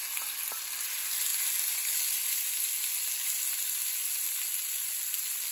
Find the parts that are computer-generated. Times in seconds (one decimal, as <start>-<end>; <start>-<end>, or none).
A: none